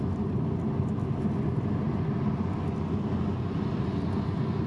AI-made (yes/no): no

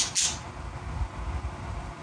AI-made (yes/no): no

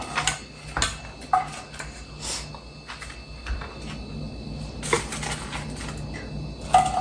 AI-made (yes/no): no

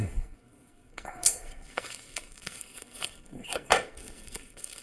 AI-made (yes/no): yes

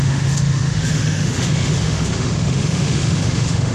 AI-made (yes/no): yes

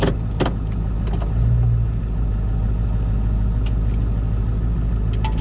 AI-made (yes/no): no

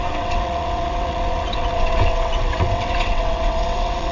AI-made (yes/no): yes